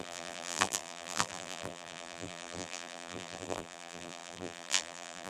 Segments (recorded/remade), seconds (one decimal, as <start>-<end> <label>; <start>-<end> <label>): 0.0-5.3 remade